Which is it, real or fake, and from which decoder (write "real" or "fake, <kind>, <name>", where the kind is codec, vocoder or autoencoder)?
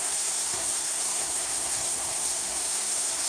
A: fake, codec, SNAC